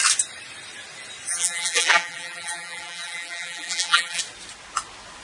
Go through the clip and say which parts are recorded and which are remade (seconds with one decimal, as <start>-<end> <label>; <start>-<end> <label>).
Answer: 0.0-1.3 recorded; 1.3-4.2 remade; 4.2-5.2 recorded

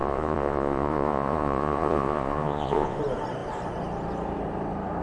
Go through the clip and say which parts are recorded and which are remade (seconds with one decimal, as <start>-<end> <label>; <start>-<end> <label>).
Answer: 0.0-3.0 remade; 3.0-5.0 recorded

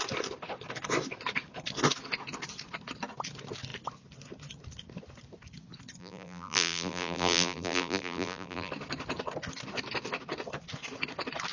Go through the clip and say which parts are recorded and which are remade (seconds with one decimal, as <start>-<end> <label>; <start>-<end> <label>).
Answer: 0.0-6.0 recorded; 6.0-8.7 remade; 8.7-11.5 recorded